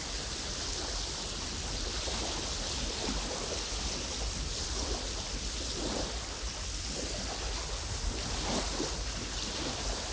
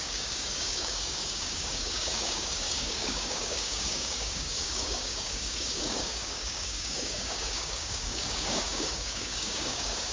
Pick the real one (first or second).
first